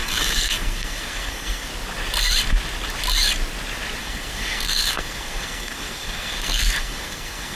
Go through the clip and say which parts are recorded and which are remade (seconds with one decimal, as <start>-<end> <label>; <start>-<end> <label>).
0.0-1.7 remade; 1.7-4.0 recorded; 4.0-7.6 remade